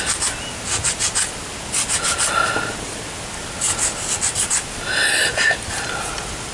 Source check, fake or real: real